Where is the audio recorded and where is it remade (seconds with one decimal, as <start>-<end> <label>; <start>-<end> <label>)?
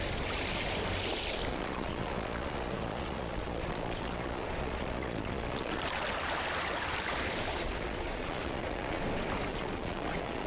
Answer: 0.0-1.5 recorded; 1.5-5.8 remade; 5.8-7.5 recorded; 7.5-9.0 remade; 9.0-9.5 recorded; 9.5-10.5 remade